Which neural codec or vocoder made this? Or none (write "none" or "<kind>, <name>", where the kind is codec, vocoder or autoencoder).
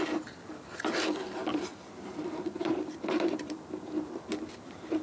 vocoder, BigVGAN v2